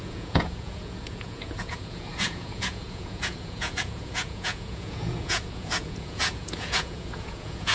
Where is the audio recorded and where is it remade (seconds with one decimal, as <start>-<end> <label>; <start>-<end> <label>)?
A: 0.0-7.7 remade